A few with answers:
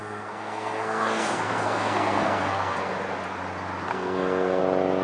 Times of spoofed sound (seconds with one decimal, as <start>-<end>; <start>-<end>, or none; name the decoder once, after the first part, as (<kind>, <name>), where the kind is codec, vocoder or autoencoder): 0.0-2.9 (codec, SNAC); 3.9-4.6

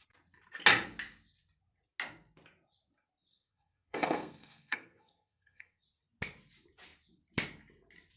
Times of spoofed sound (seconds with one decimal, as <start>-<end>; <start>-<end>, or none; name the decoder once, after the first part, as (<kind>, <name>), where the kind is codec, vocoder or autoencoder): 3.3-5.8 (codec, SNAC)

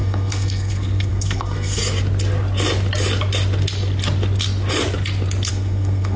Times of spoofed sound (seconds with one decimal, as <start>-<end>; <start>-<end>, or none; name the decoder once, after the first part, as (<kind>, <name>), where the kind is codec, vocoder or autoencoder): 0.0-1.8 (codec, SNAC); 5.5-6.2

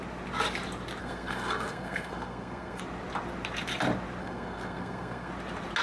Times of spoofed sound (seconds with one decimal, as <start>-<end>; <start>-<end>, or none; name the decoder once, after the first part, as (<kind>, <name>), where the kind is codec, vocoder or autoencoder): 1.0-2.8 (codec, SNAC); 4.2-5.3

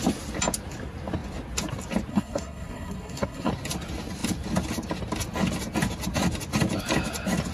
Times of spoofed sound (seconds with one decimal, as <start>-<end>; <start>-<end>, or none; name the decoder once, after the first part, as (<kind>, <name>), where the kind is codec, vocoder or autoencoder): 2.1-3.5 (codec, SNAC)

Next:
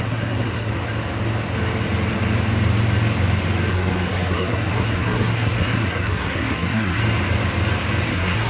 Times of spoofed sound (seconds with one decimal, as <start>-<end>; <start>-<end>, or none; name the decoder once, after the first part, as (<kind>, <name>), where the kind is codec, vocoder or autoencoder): 0.0-0.7 (codec, SNAC); 3.7-7.0; 8.1-8.5

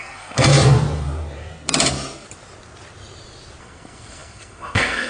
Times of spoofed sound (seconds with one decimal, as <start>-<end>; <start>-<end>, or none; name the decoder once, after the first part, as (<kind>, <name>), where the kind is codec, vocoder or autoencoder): 0.0-0.5 (codec, SNAC); 3.6-5.1